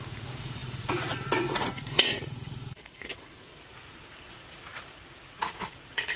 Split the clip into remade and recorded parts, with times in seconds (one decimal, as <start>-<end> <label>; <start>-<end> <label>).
0.0-6.2 remade